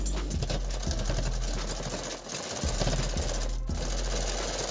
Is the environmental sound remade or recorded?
recorded